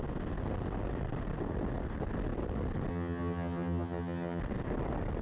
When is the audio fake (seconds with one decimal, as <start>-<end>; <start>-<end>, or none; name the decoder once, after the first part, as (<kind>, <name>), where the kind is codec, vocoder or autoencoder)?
2.9-4.4 (vocoder, HiFi-GAN)